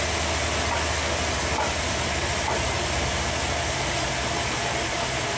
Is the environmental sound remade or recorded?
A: recorded